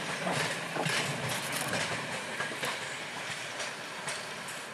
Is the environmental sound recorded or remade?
remade